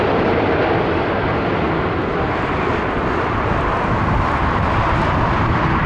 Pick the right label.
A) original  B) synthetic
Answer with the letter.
A